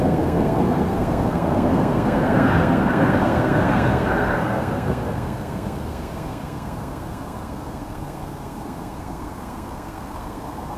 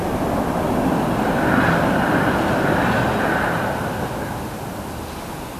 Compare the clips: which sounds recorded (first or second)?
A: second